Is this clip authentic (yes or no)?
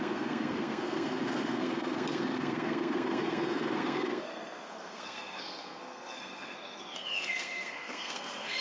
no